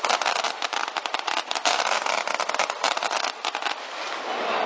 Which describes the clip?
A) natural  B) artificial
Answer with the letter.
A